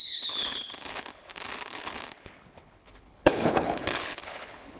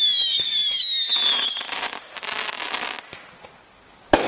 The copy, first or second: first